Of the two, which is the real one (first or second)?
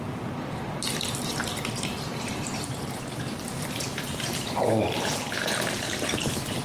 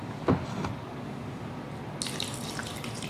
second